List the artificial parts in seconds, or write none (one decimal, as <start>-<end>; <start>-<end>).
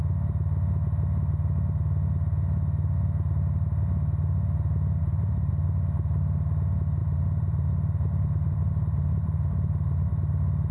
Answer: 5.0-5.5; 7.0-10.1